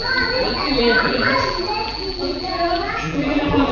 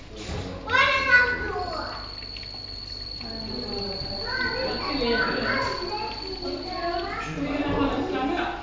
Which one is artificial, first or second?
first